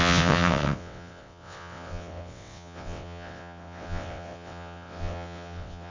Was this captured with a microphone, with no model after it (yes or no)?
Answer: no